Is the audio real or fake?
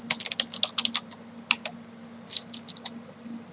real